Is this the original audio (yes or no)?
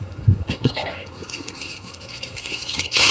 no